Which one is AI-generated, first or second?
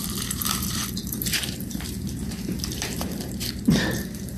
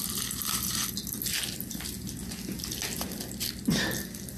first